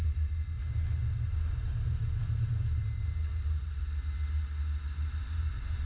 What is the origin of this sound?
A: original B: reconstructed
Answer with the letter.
A